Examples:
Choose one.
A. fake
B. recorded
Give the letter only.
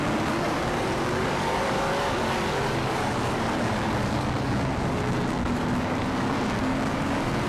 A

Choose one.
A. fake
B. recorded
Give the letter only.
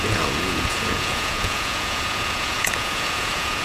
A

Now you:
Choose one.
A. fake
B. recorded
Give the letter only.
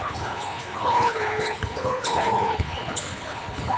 A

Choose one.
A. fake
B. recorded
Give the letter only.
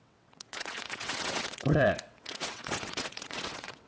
A